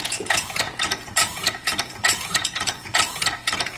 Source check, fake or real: fake